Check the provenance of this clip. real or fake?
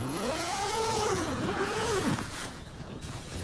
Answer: fake